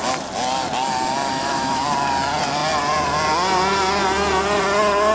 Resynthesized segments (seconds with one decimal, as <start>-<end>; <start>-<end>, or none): 1.3-1.8